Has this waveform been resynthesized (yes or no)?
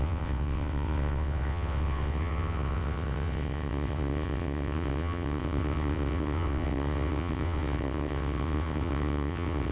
yes